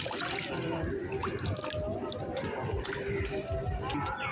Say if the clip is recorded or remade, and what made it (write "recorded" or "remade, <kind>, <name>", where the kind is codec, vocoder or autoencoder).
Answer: recorded